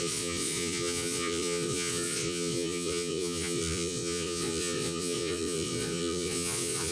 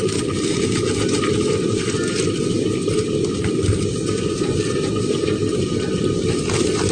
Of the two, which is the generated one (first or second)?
first